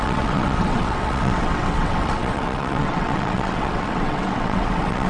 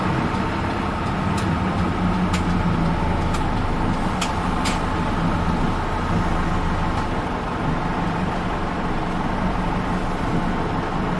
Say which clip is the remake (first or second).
first